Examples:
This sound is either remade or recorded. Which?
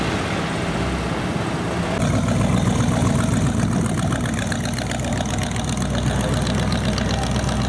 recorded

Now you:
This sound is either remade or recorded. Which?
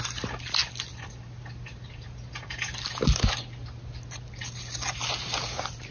recorded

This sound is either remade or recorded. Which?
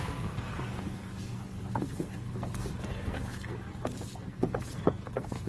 remade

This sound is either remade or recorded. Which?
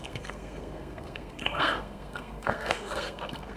remade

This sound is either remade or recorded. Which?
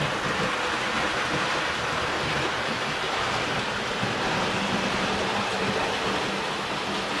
recorded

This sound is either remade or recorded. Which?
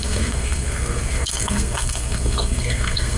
remade